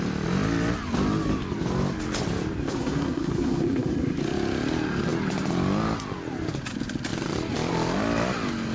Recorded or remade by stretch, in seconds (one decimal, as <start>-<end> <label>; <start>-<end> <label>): 0.0-2.7 recorded; 2.7-4.2 remade; 4.2-8.7 recorded